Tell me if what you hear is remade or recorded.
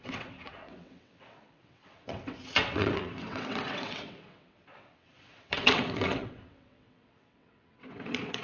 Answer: remade